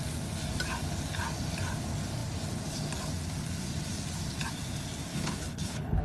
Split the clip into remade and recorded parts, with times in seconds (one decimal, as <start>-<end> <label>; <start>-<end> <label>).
0.0-5.1 recorded; 5.1-6.0 remade